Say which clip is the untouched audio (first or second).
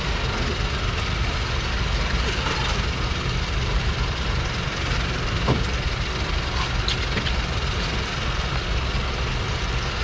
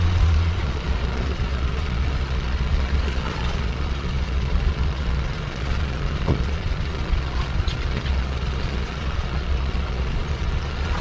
first